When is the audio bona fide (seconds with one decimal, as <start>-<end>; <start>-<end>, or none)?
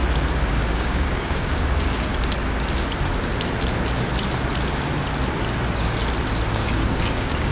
0.0-0.5; 2.1-6.5